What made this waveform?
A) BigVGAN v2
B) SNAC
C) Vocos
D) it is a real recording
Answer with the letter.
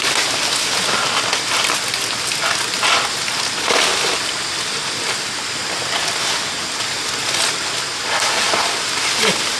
D